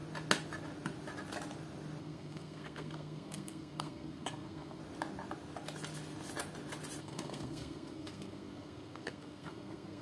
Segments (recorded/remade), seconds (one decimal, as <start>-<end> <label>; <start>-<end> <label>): 0.0-2.0 recorded; 2.0-4.8 remade; 4.8-7.0 recorded; 7.0-10.0 remade